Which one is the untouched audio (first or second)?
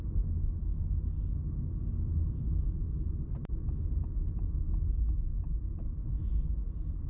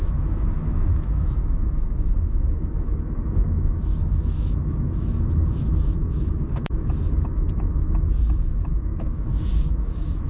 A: first